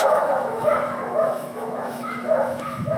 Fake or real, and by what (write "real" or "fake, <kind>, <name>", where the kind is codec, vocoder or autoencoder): fake, autoencoder, DAC-VAE